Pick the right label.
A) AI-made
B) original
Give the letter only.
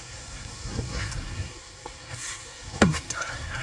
A